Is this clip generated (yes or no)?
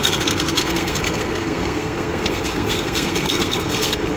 yes